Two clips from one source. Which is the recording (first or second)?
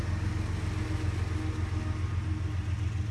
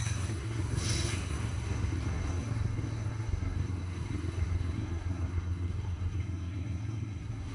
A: first